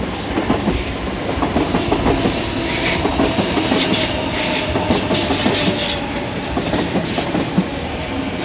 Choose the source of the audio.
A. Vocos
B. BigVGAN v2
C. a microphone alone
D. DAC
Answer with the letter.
C